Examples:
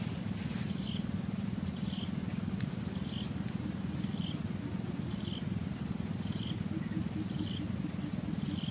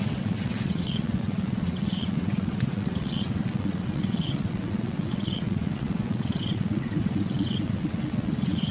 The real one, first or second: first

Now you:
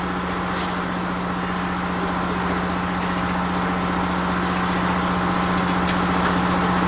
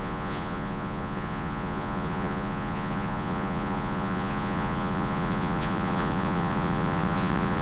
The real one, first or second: first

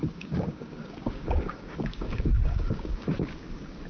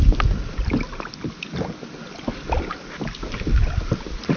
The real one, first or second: second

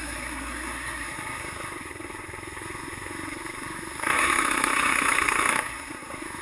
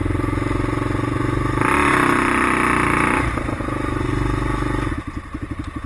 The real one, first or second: second